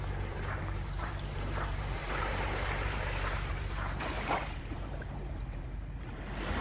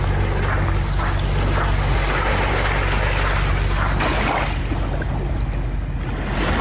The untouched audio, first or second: second